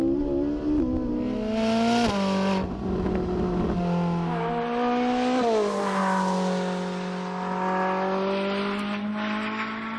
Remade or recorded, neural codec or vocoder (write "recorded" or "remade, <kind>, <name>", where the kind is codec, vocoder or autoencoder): recorded